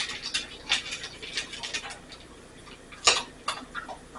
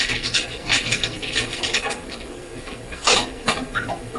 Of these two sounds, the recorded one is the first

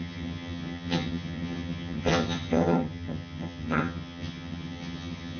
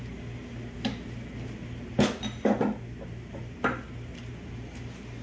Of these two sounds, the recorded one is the second